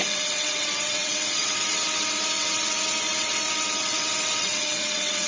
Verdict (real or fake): fake